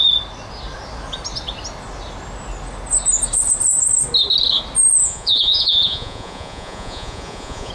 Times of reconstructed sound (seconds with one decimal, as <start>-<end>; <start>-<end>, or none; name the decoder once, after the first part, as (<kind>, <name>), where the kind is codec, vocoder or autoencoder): 5.0-7.7 (vocoder, Vocos)